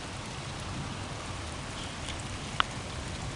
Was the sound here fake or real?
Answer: fake